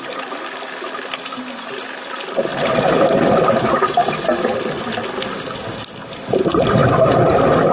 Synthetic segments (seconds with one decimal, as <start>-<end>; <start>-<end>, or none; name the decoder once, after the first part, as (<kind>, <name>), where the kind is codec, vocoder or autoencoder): 0.0-7.7 (vocoder, BigVGAN v2)